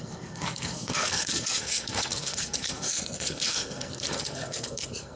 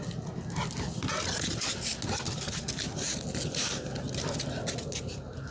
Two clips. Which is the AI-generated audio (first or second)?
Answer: first